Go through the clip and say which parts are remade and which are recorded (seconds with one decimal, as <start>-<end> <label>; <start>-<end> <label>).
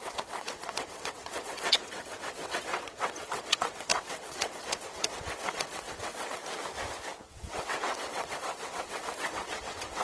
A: 0.0-6.4 remade; 6.4-7.3 recorded; 7.3-10.0 remade